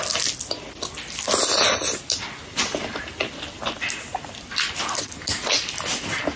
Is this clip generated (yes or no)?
no